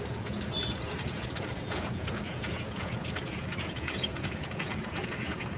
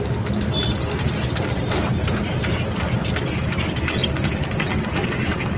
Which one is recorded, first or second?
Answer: second